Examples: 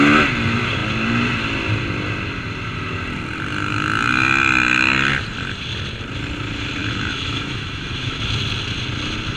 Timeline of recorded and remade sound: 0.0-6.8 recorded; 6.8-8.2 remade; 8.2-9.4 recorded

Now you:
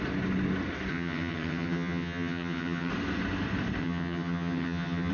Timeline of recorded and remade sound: 0.0-0.9 recorded; 0.9-2.9 remade; 2.9-3.8 recorded; 3.8-5.1 remade

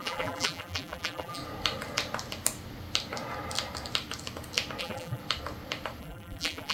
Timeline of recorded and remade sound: 0.0-1.4 remade; 1.4-4.8 recorded; 4.8-5.2 remade; 5.2-6.0 recorded; 6.0-6.7 remade

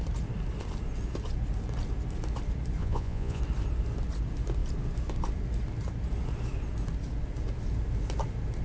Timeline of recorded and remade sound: 0.0-2.8 recorded; 2.8-3.4 remade; 3.4-8.6 recorded

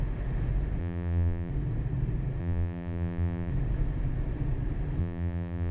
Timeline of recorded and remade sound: 0.0-0.8 recorded; 0.8-1.5 remade; 1.5-2.4 recorded; 2.4-3.5 remade; 3.5-5.0 recorded; 5.0-5.7 remade

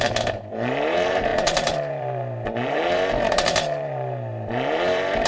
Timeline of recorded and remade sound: 0.0-5.3 remade

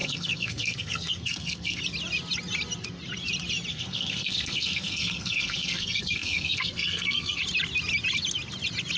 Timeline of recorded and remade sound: 0.0-1.8 remade; 1.8-3.7 recorded; 3.7-7.4 remade; 7.4-9.0 recorded

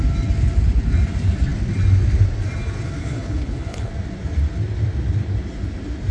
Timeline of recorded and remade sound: 0.0-3.0 recorded; 3.0-3.9 remade; 3.9-6.1 recorded